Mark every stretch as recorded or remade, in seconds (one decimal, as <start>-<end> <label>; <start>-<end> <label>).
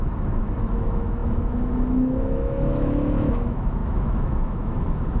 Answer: 0.0-5.2 remade